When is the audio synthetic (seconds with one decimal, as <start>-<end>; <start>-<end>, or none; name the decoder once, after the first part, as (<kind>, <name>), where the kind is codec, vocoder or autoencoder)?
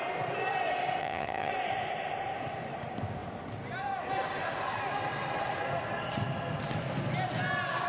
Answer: 1.0-1.5 (vocoder, HiFi-GAN)